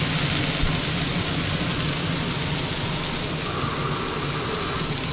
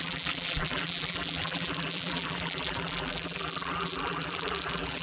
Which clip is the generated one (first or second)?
second